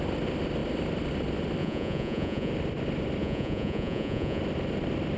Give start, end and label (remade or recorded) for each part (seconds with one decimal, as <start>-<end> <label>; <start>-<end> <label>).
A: 0.0-1.6 recorded; 1.6-2.5 remade; 2.5-3.2 recorded; 3.2-4.4 remade; 4.4-5.2 recorded